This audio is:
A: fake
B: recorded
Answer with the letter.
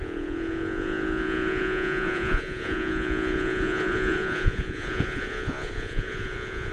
A